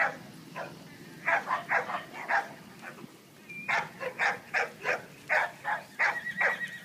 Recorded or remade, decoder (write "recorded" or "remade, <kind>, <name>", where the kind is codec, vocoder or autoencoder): recorded